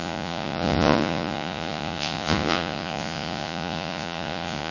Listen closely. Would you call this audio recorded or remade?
remade